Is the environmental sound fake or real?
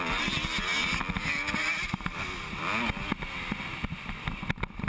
real